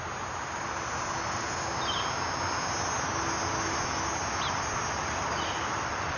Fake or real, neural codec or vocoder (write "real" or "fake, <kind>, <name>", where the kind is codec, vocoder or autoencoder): real